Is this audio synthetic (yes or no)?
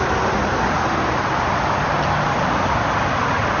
no